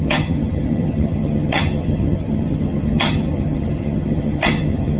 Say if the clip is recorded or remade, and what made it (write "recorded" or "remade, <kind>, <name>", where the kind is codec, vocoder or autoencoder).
remade, vocoder, HiFi-GAN